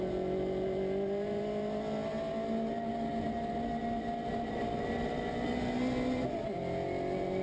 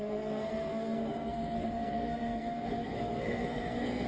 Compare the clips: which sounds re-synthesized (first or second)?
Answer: second